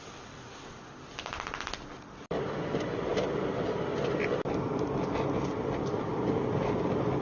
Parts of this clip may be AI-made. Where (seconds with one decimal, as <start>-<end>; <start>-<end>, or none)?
none